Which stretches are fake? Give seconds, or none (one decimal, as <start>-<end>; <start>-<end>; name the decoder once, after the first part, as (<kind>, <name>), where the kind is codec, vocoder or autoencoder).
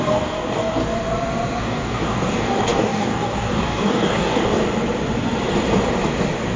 0.0-0.8 (codec, DAC); 1.6-4.6